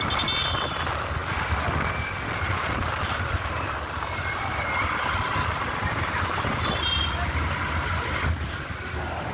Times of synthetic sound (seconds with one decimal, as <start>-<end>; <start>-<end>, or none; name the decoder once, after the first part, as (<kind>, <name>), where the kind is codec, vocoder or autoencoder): none